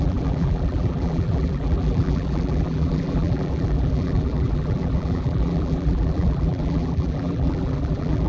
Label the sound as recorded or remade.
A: remade